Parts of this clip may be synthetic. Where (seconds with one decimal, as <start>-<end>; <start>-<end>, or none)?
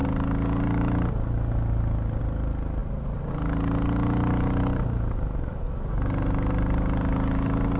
2.8-3.3